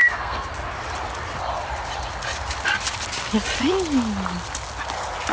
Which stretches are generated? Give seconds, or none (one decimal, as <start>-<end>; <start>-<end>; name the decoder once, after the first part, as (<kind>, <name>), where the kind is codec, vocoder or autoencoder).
0.0-0.5 (codec, SNAC)